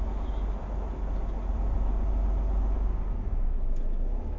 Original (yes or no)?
yes